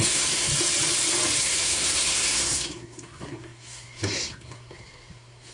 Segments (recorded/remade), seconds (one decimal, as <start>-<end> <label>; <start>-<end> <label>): 0.0-0.5 remade; 0.5-1.4 recorded; 1.4-5.5 remade